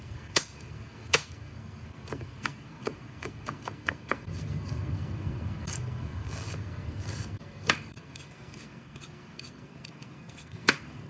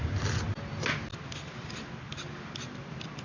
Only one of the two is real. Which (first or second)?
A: second